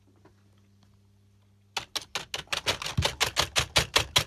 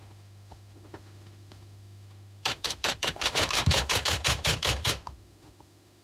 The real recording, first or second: first